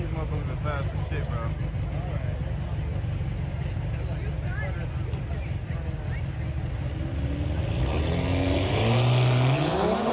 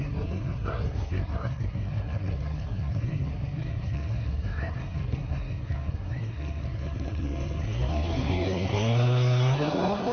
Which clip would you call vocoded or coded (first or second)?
second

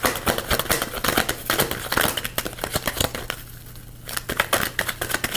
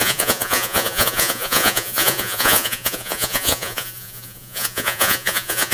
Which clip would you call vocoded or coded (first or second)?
second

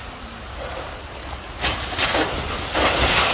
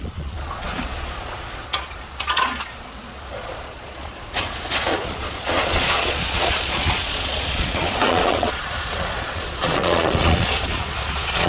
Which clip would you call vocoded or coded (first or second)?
second